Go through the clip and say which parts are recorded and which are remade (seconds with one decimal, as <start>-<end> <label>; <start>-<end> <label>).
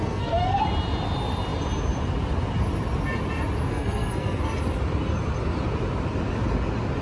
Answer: 0.0-0.6 remade; 0.6-3.7 recorded; 3.7-4.4 remade; 4.4-7.0 recorded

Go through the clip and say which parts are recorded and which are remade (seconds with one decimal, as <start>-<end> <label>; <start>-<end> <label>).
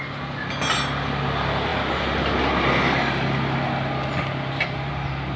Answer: 0.0-5.4 recorded